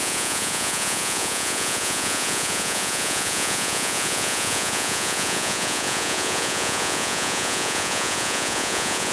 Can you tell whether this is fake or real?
fake